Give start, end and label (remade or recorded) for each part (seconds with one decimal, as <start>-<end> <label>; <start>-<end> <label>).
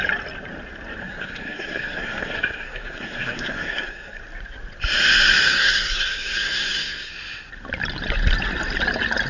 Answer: 0.0-1.0 recorded; 1.0-4.2 remade; 4.2-5.4 recorded; 5.4-7.1 remade; 7.1-9.3 recorded